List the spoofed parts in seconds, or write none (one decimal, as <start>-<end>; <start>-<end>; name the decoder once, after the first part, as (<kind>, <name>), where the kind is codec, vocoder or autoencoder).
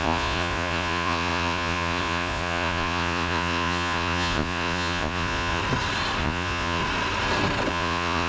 0.0-5.6 (vocoder, Vocos); 6.2-6.8; 7.7-8.3